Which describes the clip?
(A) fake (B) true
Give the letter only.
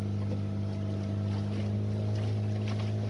B